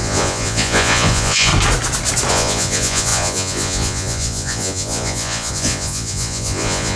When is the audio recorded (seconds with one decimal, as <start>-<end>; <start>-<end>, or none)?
1.5-2.3

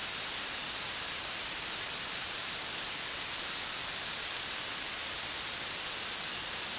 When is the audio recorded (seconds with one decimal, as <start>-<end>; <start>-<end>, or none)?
0.0-6.8

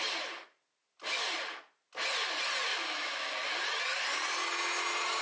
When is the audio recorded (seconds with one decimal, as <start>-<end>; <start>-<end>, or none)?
0.0-2.7; 3.3-5.2

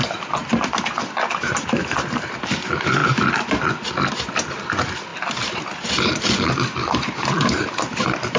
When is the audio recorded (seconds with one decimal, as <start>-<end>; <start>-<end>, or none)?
0.4-2.2; 3.0-4.1; 5.1-5.6

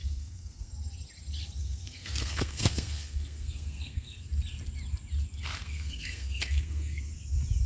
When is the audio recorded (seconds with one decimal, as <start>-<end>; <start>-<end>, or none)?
0.7-1.6; 4.3-5.6; 7.1-7.7

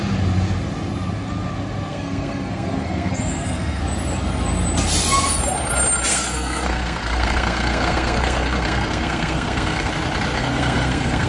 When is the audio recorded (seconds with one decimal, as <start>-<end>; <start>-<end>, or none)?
0.0-1.9; 3.8-6.1; 9.9-10.3